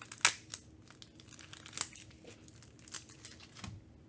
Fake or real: real